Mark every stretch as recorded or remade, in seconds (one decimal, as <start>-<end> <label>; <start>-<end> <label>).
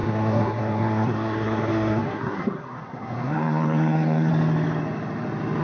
0.0-4.3 remade; 4.3-5.6 recorded